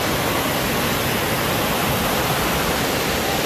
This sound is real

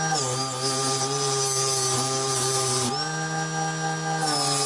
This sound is real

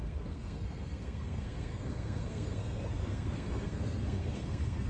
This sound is fake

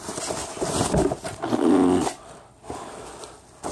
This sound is real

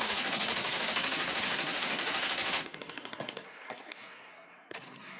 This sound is fake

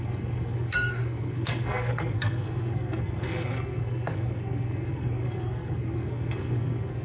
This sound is fake